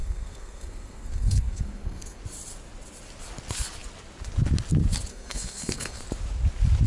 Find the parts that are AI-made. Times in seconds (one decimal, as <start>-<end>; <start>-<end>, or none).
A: 0.0-2.2; 5.1-6.0